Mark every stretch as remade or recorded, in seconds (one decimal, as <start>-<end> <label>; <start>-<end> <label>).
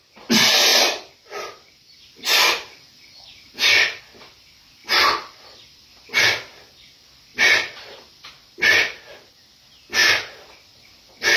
0.0-0.7 recorded; 0.7-4.0 remade; 4.0-4.8 recorded; 4.8-6.2 remade; 6.2-7.3 recorded; 7.3-8.3 remade; 8.3-11.4 recorded